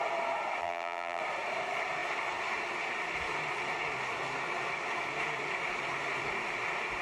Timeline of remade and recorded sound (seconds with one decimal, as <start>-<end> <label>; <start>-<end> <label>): 0.0-0.6 recorded; 0.6-1.2 remade; 1.2-7.0 recorded